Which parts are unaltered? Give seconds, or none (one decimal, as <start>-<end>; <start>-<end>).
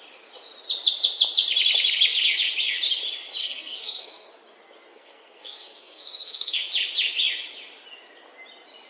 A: 0.0-3.4; 4.3-4.9; 6.7-8.9